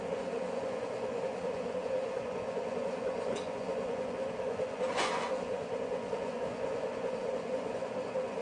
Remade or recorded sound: remade